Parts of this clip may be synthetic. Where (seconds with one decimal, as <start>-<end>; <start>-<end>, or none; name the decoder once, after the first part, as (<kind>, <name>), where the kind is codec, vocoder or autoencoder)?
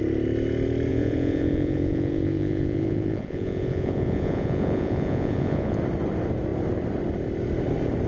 0.9-5.8 (vocoder, Vocos)